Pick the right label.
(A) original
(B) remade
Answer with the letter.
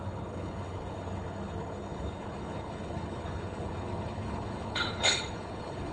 B